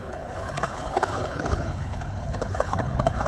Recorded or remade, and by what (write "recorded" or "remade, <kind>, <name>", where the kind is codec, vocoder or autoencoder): remade, codec, HILCodec